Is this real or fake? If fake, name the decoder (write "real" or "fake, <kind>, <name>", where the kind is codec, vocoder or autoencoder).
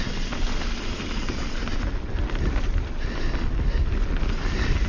real